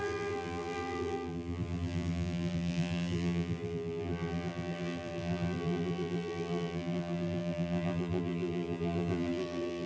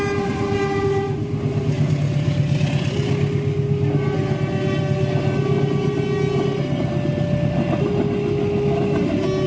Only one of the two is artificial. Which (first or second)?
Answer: first